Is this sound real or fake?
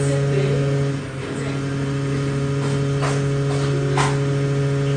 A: real